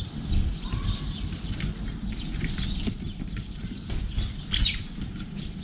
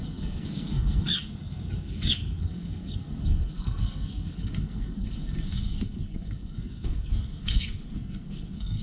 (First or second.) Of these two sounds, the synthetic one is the second